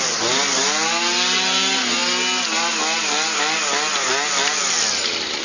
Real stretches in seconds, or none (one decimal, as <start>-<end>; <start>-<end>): 0.0-5.4